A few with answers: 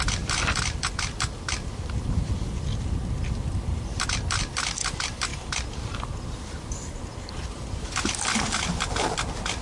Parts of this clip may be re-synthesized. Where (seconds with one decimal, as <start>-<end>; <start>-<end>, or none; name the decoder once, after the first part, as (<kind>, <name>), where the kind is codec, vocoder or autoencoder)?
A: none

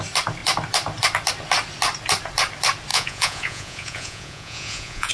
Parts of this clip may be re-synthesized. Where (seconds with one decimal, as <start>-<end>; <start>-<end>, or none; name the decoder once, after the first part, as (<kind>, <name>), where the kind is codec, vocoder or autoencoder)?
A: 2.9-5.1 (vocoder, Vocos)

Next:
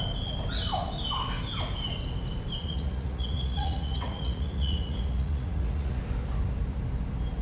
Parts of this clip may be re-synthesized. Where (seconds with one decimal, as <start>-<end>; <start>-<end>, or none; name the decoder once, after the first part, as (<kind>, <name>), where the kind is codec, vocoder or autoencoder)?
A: 2.6-6.0 (vocoder, Vocos)